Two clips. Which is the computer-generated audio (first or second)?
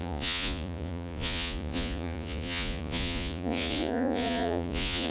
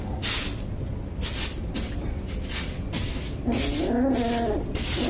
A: first